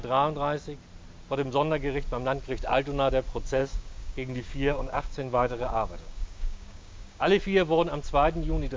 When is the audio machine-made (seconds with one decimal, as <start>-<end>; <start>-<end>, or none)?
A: 3.6-7.4